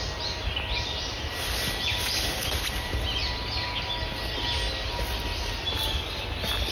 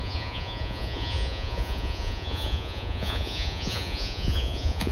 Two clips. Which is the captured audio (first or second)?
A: first